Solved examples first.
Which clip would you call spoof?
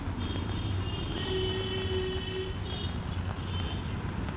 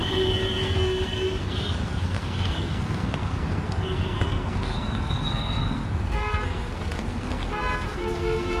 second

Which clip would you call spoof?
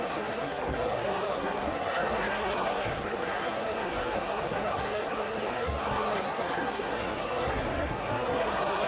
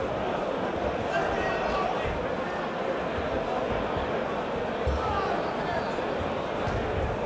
first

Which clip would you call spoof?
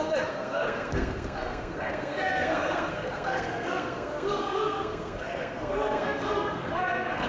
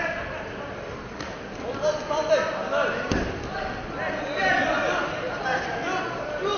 first